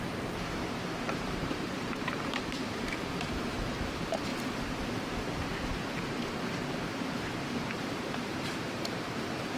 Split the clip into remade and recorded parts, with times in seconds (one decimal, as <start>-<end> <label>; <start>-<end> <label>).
0.0-4.3 remade; 4.3-7.1 recorded; 7.1-9.6 remade

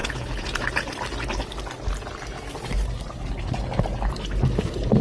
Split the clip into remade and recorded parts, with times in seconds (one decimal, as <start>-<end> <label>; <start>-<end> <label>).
0.0-0.9 remade; 0.9-5.0 recorded

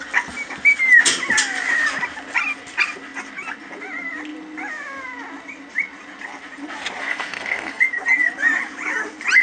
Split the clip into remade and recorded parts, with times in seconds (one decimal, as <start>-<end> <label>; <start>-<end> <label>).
0.0-7.0 recorded; 7.0-7.8 remade; 7.8-9.4 recorded

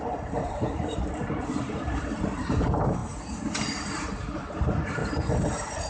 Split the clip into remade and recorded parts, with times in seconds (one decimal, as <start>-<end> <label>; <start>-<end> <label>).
0.0-3.0 remade; 3.0-3.9 recorded; 3.9-5.9 remade